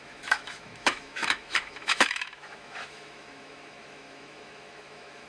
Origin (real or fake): fake